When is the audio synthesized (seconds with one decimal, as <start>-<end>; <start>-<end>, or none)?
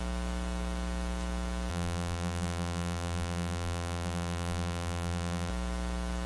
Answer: 1.7-5.5